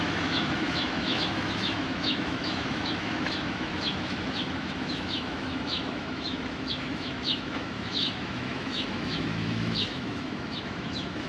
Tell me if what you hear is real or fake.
fake